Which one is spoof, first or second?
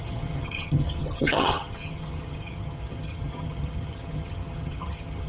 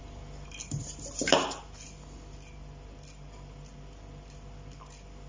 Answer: first